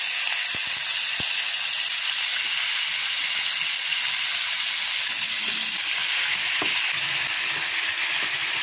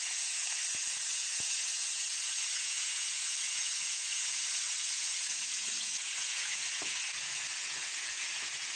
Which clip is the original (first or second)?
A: first